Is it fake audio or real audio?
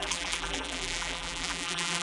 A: fake